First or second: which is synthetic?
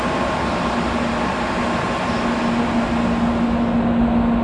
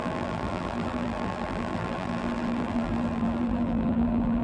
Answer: second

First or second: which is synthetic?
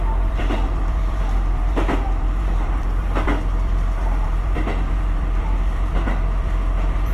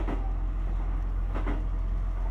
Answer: first